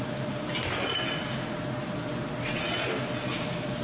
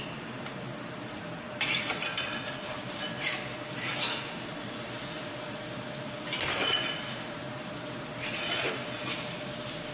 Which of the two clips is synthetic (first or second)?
second